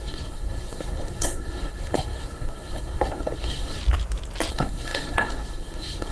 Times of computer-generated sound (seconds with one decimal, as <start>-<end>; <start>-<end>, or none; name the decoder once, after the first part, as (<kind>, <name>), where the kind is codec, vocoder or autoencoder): 0.0-3.8 (codec, SNAC); 4.5-6.1